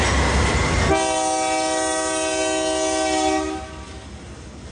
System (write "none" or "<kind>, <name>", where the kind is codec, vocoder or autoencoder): none